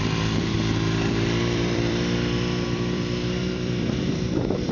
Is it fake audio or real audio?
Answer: fake